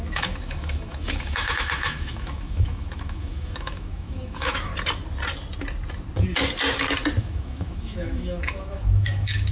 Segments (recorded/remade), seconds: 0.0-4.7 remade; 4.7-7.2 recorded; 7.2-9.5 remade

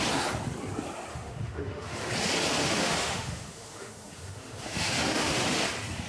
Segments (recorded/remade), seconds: 0.0-1.1 recorded; 1.1-2.1 remade; 2.1-2.6 recorded; 2.6-5.6 remade; 5.6-6.1 recorded

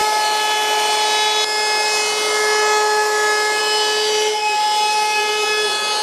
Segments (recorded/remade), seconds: 0.0-6.0 recorded

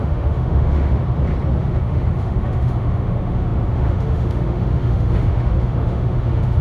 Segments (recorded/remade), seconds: 0.0-1.0 remade; 1.0-1.6 recorded; 1.6-6.6 remade